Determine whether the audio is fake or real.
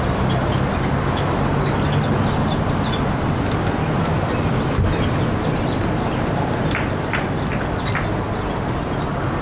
real